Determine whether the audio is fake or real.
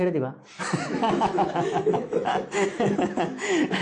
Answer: fake